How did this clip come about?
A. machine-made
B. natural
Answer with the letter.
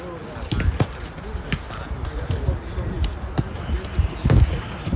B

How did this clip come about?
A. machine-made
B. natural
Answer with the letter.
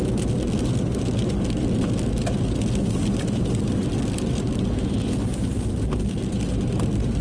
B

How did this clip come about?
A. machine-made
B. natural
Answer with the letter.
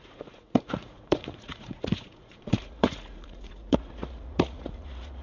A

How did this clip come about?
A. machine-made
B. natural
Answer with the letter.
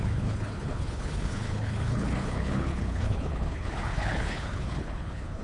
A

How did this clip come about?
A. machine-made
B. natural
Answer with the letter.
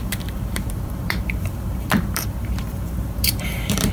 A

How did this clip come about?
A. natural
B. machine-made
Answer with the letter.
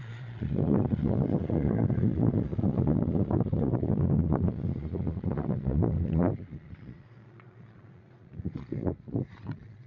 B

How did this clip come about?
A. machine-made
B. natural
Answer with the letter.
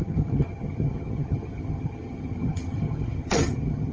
A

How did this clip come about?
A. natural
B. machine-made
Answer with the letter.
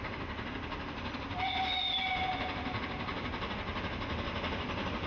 A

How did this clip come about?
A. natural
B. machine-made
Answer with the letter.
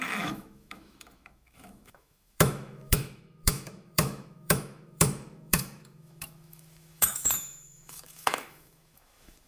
B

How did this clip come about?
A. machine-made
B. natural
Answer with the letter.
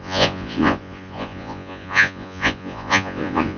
A